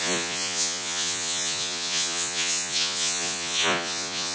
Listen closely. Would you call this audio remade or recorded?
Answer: remade